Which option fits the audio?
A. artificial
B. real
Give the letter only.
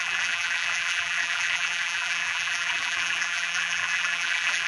A